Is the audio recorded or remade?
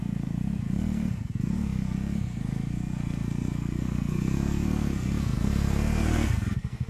remade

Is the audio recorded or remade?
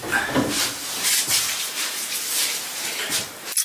recorded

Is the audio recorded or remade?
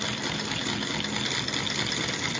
recorded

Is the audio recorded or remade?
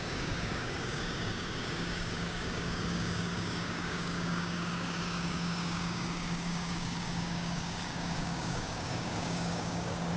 remade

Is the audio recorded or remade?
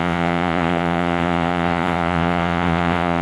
remade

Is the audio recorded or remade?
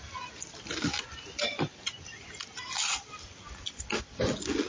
recorded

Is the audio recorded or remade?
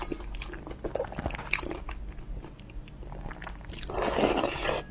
recorded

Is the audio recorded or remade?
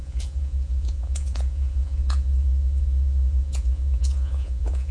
remade